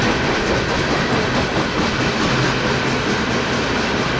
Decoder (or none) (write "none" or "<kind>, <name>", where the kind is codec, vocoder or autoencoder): none